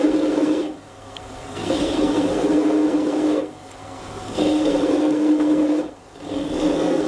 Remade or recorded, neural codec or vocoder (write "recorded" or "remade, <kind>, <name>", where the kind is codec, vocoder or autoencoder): remade, codec, SNAC